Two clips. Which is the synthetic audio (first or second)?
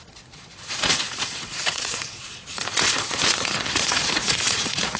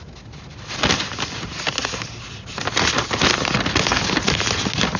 first